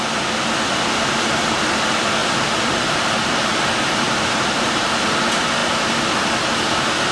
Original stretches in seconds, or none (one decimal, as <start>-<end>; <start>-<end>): 0.0-2.2; 4.9-7.1